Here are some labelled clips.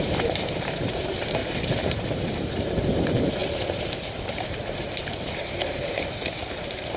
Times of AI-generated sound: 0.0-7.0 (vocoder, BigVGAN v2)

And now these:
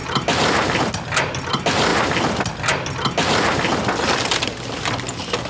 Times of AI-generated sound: 0.0-0.8 (vocoder, BigVGAN v2)

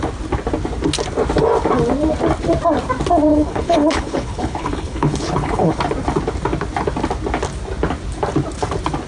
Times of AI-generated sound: 3.3-5.8 (codec, HILCodec)

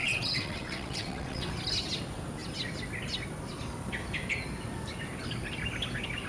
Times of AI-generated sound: 0.0-1.5 (vocoder, WaveNeXt)

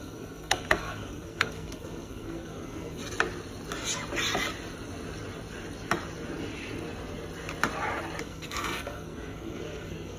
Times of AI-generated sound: 0.0-3.0 (codec, SNAC); 8.2-10.2

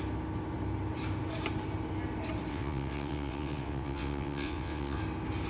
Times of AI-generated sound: 2.5-5.0 (vocoder, WaveNeXt)

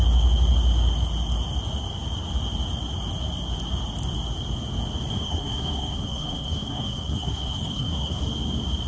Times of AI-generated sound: 5.1-8.2 (codec, SNAC)